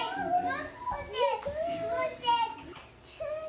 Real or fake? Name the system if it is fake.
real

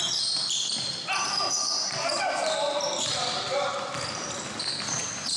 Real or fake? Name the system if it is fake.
real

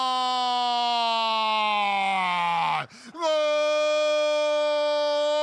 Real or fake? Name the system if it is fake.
real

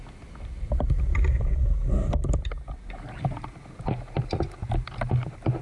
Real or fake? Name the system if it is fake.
real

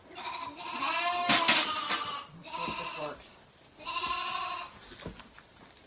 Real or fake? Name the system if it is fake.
real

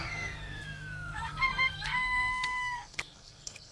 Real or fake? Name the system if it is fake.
fake, codec, SNAC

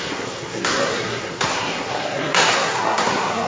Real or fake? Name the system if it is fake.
fake, codec, SNAC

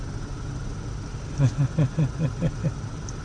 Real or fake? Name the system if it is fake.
real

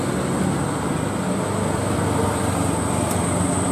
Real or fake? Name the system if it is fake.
real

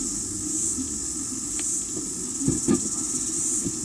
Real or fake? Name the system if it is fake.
real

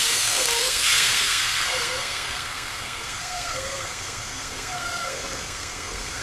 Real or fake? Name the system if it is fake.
fake, codec, SNAC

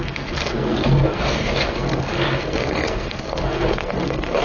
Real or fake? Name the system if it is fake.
fake, codec, SNAC